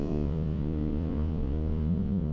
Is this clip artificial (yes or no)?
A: yes